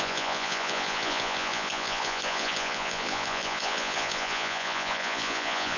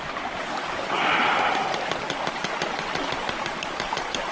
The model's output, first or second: first